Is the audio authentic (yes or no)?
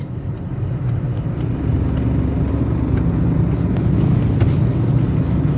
yes